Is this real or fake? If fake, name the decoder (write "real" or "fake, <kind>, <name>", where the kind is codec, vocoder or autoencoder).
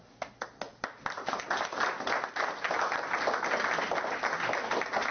real